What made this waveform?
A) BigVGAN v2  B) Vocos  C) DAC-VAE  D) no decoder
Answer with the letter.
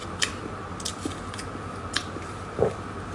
D